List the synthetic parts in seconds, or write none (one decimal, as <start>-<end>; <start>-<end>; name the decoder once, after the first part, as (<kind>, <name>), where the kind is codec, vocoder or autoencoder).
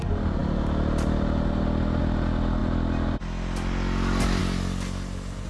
none